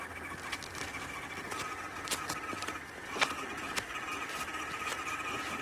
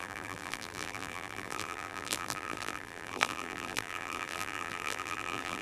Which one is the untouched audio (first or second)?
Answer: first